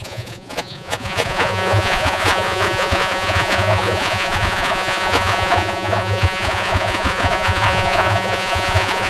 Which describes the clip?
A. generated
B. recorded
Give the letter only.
A